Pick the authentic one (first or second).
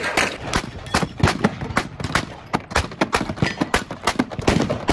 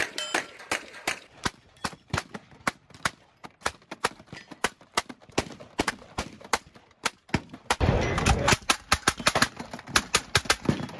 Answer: first